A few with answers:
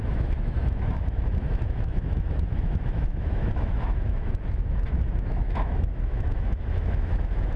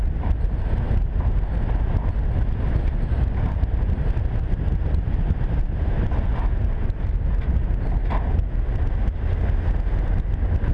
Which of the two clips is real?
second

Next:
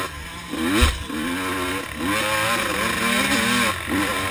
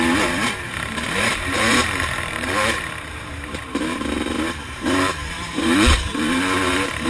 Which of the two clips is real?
first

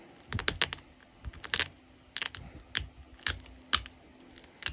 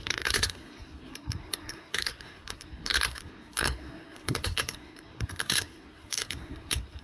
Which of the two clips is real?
first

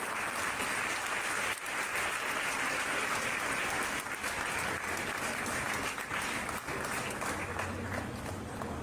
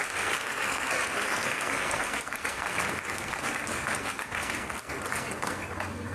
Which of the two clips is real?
first